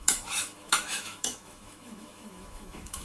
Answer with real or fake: fake